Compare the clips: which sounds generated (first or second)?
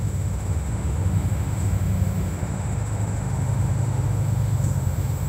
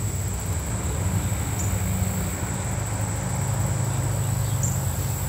first